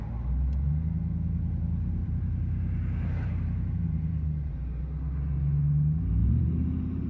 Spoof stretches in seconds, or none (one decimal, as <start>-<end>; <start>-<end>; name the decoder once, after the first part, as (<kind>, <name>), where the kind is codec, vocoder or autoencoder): 2.0-4.8 (vocoder, BigVGAN v2); 6.2-7.1

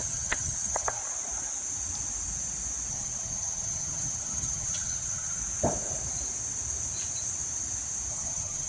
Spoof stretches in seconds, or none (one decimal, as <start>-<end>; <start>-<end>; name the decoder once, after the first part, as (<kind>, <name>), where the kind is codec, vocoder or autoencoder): 0.0-1.0 (vocoder, HiFi-GAN); 2.9-5.4; 8.1-8.7

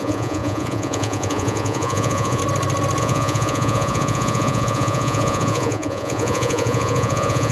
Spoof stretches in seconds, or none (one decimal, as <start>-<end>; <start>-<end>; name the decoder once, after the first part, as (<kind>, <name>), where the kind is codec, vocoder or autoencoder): 0.0-2.4 (vocoder, Vocos); 3.0-7.5

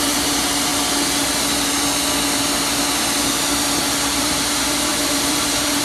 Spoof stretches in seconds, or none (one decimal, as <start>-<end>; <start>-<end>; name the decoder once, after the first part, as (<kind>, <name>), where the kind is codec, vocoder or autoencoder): 0.0-0.7 (vocoder, BigVGAN v2); 4.2-5.8

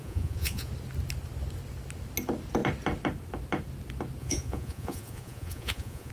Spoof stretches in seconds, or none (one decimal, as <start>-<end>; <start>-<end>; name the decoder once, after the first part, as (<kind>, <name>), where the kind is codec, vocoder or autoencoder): 0.0-0.7 (vocoder, Vocos); 4.2-6.1